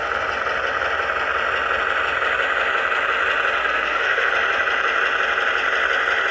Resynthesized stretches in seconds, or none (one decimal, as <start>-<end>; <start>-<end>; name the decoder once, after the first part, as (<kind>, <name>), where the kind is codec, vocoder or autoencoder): 3.6-4.3 (codec, SNAC)